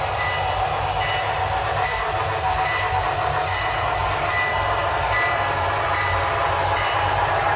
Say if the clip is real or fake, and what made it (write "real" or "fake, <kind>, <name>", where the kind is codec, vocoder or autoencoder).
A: real